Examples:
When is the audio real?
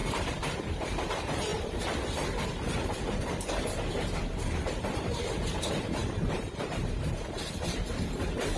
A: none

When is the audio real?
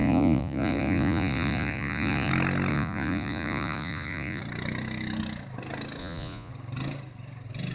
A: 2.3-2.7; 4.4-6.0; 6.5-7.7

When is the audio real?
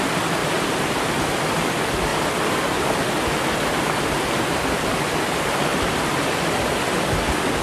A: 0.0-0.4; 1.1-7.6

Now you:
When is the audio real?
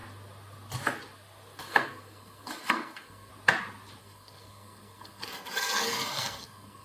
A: 0.0-1.6; 3.3-4.0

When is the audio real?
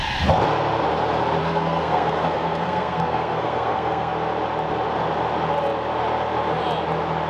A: 0.0-1.4; 4.1-7.3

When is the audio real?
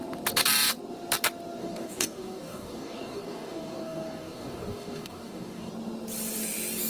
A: 0.0-1.6; 5.7-6.9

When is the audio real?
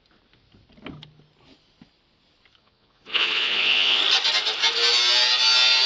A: 0.0-2.6; 4.0-5.9